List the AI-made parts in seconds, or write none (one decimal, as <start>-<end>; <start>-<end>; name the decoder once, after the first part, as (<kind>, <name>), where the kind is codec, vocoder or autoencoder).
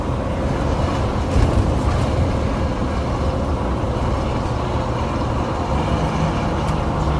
none